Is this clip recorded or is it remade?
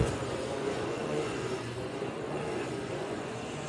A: remade